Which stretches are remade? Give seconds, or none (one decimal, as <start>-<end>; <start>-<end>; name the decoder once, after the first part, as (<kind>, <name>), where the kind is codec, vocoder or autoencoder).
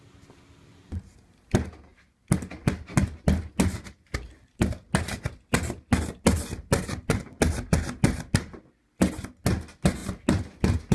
none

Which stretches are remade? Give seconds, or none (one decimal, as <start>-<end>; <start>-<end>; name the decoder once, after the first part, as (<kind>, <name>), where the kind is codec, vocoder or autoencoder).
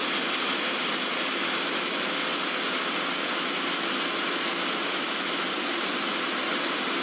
none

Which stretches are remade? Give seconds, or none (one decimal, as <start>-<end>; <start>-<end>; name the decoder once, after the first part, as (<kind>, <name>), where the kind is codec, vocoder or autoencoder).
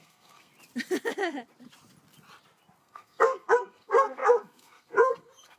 0.0-0.5 (codec, SNAC); 2.8-5.6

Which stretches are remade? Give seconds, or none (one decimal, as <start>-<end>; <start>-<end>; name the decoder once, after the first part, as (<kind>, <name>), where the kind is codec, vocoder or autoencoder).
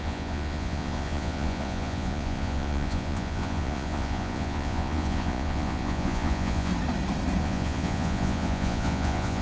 0.0-6.7 (vocoder, Vocos); 7.4-9.4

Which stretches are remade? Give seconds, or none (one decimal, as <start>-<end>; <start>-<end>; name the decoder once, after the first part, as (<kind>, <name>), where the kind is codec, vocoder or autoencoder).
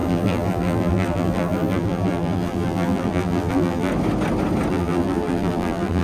0.0-3.9 (vocoder, BigVGAN v2); 4.7-6.0